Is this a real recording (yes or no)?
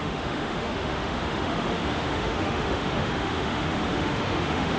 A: no